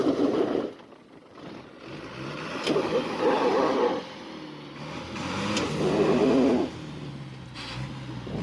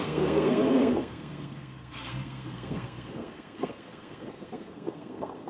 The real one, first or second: first